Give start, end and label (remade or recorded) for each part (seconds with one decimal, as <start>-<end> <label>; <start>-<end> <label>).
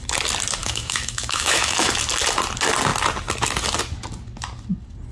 0.0-0.6 recorded; 0.6-1.9 remade; 1.9-5.1 recorded